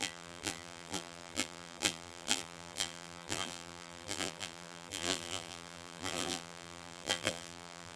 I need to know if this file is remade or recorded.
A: remade